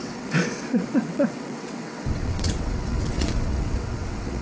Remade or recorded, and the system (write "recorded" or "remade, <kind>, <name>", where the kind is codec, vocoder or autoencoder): remade, vocoder, WaveNeXt